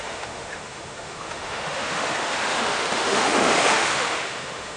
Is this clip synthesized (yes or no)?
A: yes